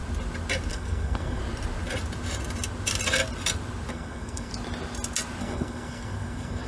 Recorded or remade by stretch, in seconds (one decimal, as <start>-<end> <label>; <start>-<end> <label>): 0.0-0.7 recorded; 0.7-1.4 remade; 1.4-3.9 recorded; 3.9-4.5 remade; 4.5-5.4 recorded; 5.4-6.7 remade